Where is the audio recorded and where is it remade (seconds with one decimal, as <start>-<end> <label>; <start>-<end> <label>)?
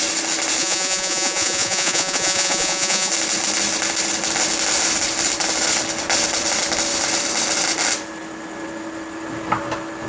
0.0-0.6 recorded; 0.6-3.1 remade; 3.1-10.1 recorded